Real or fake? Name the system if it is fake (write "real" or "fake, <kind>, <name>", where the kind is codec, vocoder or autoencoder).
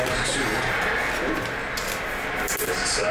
real